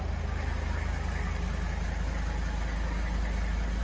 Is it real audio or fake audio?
real